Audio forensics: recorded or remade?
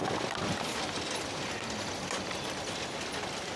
recorded